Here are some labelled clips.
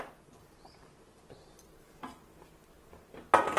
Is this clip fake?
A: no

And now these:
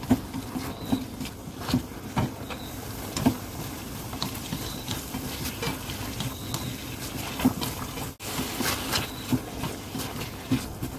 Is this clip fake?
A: no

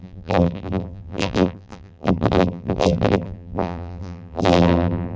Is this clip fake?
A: yes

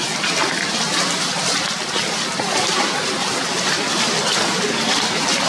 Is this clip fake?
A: yes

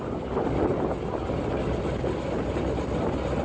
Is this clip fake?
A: no